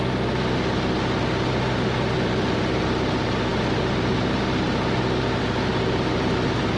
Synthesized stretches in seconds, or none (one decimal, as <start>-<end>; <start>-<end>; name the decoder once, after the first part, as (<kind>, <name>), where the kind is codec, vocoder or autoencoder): none